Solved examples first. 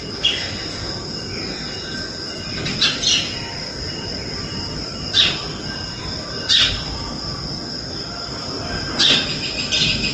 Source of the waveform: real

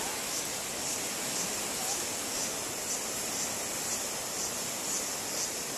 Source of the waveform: real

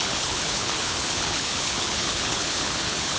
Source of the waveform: fake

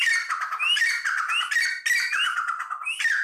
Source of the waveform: real